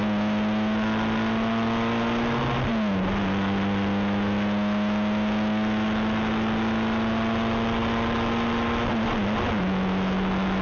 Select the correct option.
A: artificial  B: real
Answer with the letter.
B